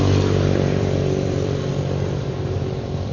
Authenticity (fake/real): fake